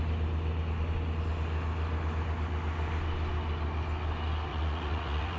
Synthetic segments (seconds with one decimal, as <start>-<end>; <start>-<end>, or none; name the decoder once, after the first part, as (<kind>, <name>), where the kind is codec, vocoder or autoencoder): 4.5-5.4 (vocoder, Vocos)